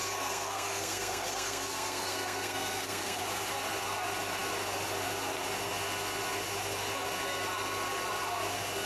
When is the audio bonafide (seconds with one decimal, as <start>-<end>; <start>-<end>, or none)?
3.2-8.9